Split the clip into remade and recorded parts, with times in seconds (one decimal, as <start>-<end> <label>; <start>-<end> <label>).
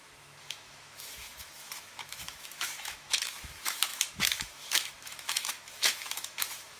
0.0-6.8 remade